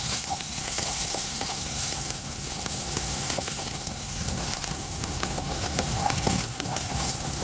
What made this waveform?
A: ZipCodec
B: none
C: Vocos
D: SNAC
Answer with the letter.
D